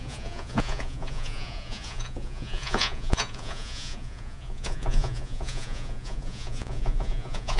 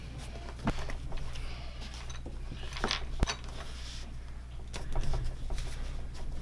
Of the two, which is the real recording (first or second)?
second